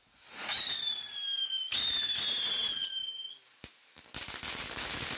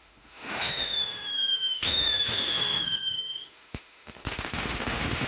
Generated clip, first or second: second